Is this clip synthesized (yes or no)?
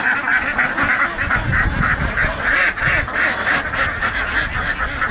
no